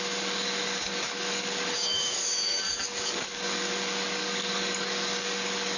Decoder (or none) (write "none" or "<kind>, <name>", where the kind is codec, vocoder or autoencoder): codec, DAC